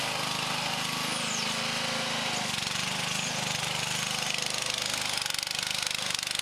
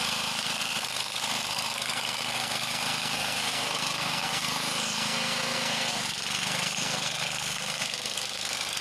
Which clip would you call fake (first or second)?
second